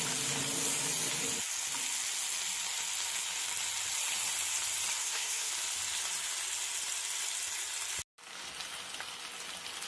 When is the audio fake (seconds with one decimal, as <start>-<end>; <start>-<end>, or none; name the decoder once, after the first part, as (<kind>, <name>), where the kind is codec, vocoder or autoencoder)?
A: 5.0-5.5 (codec, SNAC)